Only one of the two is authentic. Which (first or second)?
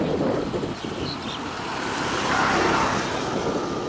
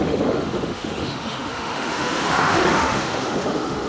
first